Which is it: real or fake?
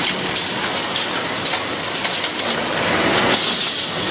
real